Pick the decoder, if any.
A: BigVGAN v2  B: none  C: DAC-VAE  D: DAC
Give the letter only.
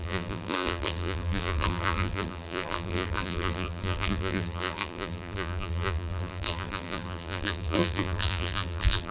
A